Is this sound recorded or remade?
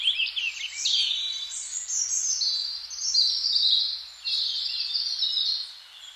recorded